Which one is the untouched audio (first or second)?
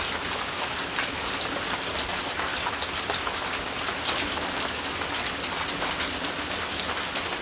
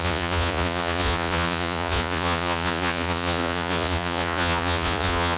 first